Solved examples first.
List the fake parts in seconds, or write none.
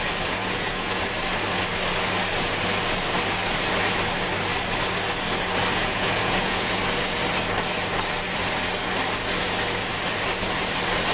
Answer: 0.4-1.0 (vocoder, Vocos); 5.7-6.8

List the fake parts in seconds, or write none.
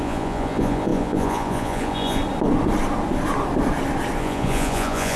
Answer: 0.0-2.2 (vocoder, Vocos); 4.2-5.2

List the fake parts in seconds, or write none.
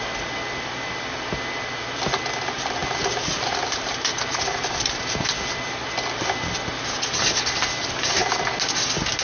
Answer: 2.8-5.4 (vocoder, BigVGAN v2)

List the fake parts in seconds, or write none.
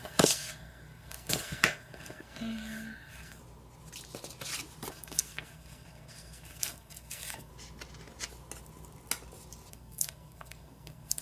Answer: 0.0-3.4 (codec, SNAC); 4.9-7.5; 9.7-11.2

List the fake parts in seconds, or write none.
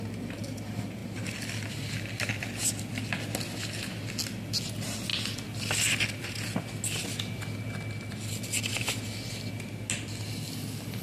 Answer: none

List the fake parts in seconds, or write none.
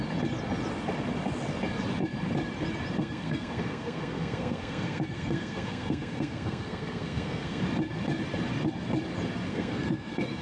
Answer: 3.0-7.6 (codec, SNAC); 9.5-10.4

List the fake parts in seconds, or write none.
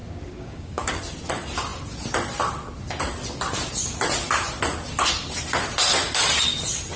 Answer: 0.0-1.0 (codec, DAC)